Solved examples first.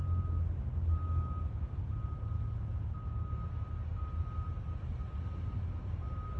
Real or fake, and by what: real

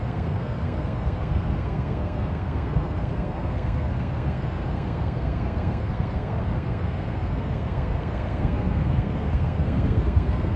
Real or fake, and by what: fake, codec, SNAC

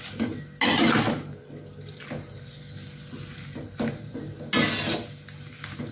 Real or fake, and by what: real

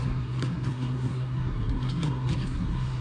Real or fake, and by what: fake, codec, SNAC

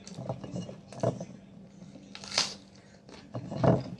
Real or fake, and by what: real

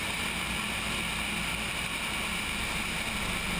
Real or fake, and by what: real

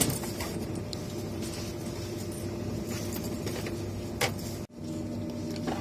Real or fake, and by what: real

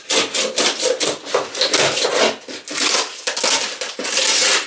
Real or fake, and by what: real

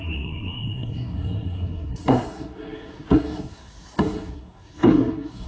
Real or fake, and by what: fake, codec, SNAC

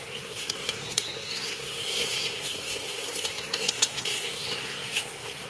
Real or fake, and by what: fake, codec, SNAC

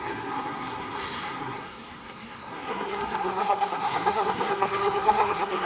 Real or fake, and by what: fake, codec, SNAC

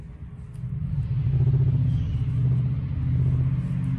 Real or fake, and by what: real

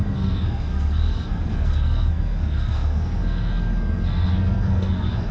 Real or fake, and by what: fake, codec, SNAC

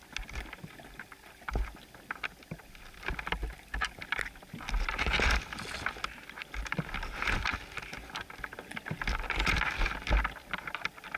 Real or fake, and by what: real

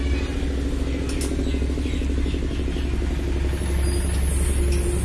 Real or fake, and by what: real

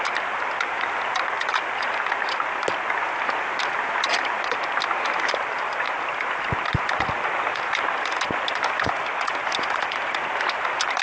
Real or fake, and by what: real